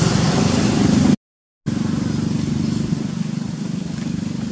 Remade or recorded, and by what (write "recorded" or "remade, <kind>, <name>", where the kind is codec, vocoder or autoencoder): recorded